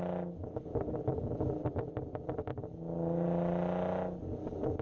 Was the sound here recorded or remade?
recorded